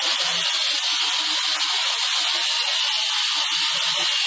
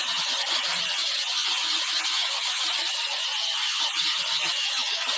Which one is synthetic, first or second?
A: second